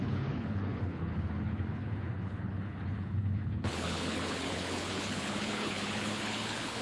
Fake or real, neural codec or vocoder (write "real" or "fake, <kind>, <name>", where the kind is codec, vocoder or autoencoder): fake, codec, HILCodec